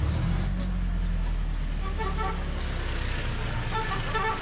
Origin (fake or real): real